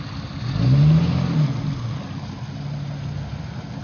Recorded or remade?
recorded